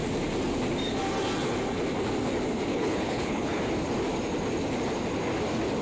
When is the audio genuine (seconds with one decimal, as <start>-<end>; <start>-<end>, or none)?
0.0-2.7; 3.6-5.8